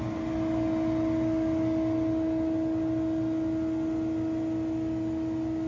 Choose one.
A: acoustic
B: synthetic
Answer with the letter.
A